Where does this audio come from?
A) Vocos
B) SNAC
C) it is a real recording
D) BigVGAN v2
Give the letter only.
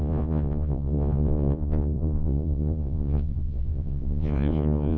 A